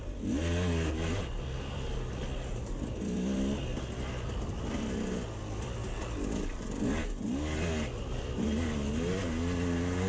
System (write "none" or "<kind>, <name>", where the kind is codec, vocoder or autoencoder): none